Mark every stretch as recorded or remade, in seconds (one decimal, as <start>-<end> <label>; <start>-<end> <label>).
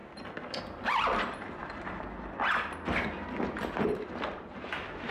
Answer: 0.0-5.1 recorded